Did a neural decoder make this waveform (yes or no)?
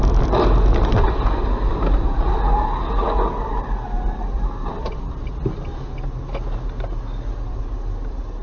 no